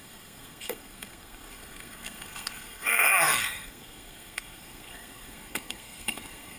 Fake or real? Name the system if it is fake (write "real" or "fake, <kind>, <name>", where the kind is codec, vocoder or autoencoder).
fake, codec, SNAC